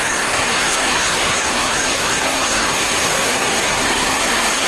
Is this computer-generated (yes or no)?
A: yes